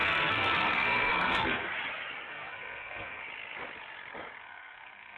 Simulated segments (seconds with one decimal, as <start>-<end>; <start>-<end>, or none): 0.0-1.7; 2.3-3.2; 4.4-5.2